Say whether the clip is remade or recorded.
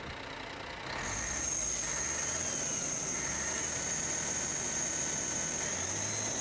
recorded